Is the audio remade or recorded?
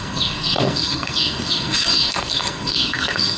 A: remade